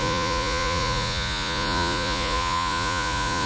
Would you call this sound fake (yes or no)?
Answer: yes